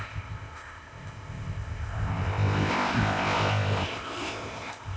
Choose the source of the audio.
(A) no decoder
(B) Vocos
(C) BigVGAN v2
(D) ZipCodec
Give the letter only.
D